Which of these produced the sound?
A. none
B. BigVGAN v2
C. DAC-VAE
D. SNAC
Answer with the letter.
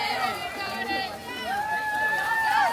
B